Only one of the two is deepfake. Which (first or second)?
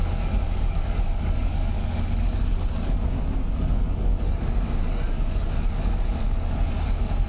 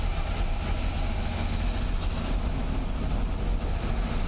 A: first